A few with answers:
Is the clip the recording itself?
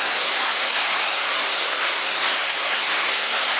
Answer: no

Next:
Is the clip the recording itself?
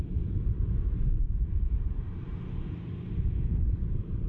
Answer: no